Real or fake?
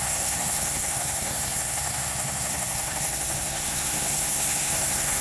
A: fake